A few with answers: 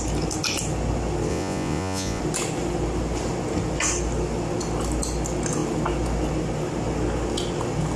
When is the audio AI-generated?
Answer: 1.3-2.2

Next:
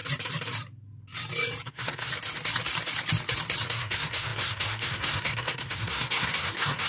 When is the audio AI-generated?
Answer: 1.7-2.1; 3.7-6.9